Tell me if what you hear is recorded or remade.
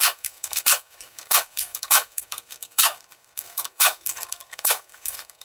remade